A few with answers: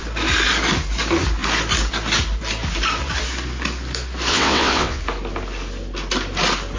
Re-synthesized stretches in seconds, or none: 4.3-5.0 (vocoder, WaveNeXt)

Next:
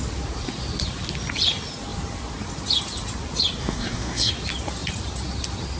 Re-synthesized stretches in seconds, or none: 3.6-4.3 (codec, SNAC)

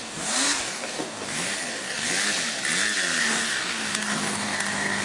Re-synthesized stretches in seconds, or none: 0.0-2.1 (codec, DAC); 3.2-5.0

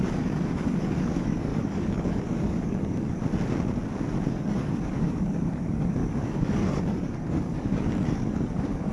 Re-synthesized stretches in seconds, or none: 0.0-3.2 (codec, DAC); 4.3-8.9